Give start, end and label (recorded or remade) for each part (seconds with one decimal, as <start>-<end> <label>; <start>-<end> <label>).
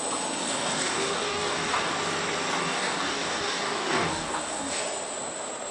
0.0-0.4 recorded; 0.4-1.9 remade; 1.9-2.6 recorded; 2.6-4.8 remade; 4.8-5.7 recorded